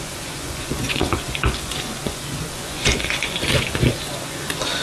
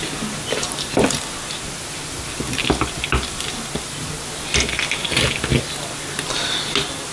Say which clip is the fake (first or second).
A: first